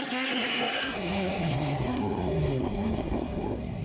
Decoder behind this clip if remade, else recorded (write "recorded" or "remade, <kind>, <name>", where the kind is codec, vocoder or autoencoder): remade, codec, SNAC